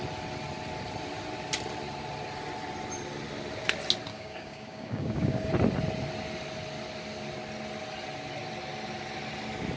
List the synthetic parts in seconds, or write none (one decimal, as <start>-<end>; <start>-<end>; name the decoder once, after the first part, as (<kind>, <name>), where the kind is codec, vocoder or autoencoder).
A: 4.1-5.5 (codec, DAC)